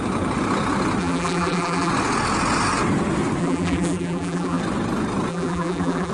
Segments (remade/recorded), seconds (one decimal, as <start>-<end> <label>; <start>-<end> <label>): 0.0-1.0 recorded; 1.0-1.9 remade; 1.9-3.4 recorded; 3.4-4.6 remade; 4.6-5.3 recorded; 5.3-6.1 remade